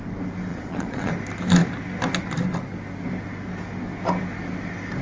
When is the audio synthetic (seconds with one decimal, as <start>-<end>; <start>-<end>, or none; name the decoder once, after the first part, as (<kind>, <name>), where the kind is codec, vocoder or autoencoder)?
0.5-1.1 (vocoder, Vocos)

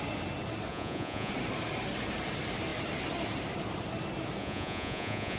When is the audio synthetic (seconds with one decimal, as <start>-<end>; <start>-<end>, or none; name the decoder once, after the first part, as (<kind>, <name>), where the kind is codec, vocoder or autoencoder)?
0.7-1.3 (vocoder, Vocos); 4.4-5.4

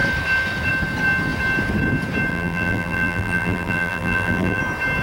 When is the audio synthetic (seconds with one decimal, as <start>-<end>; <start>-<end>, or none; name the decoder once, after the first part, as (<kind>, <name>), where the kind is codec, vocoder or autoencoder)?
2.3-4.6 (vocoder, BigVGAN v2)

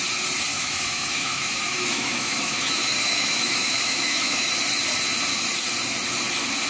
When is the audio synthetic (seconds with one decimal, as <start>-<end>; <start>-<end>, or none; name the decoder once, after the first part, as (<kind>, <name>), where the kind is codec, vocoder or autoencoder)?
0.5-4.5 (autoencoder, DAC-VAE)

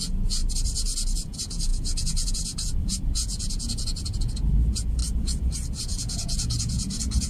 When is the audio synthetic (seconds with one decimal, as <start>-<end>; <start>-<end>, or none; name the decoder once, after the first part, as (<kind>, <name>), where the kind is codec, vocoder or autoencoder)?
0.0-0.4 (vocoder, Vocos); 1.1-5.0; 5.8-7.3